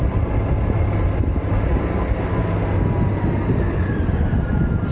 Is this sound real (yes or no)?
yes